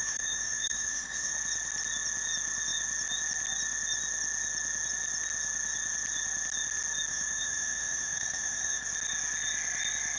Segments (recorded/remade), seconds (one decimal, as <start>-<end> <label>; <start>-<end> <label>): 0.0-1.3 remade; 1.3-7.1 recorded; 7.1-8.8 remade; 8.8-10.2 recorded